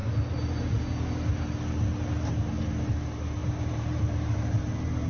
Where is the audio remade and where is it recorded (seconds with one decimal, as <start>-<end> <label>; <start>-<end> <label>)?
0.0-2.8 recorded; 2.8-5.1 remade